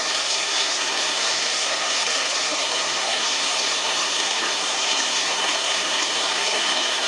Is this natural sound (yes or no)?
no